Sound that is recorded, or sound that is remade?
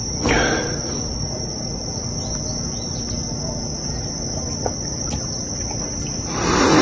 recorded